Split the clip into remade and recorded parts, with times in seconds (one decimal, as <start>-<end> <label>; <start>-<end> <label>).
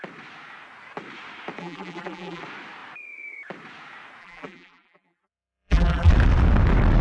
0.0-1.6 recorded; 1.6-2.4 remade; 2.4-4.2 recorded; 4.2-6.1 remade; 6.1-7.0 recorded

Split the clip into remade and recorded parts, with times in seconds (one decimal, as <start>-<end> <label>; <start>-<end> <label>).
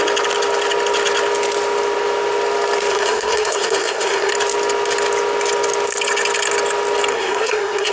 0.0-2.9 recorded; 2.9-4.3 remade; 4.3-7.1 recorded; 7.1-7.9 remade